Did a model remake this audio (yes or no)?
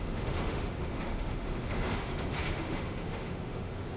yes